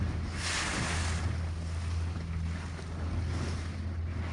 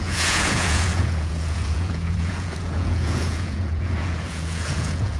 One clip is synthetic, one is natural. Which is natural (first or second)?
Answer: first